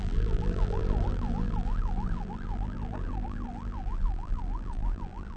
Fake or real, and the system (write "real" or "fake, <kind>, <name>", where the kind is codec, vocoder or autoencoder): fake, vocoder, BigVGAN v2